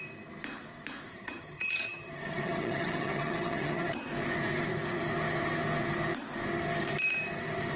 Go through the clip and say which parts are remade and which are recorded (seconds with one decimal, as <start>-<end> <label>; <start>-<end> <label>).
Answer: 0.0-1.1 recorded; 1.1-4.0 remade; 4.0-7.8 recorded